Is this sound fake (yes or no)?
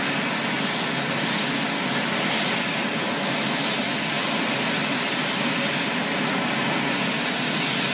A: no